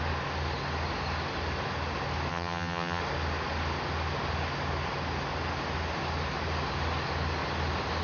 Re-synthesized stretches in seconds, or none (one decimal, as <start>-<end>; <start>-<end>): 2.3-3.0